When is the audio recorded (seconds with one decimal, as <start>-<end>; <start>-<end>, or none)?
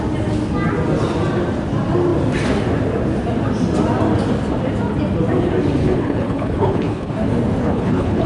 0.0-5.8; 7.1-7.6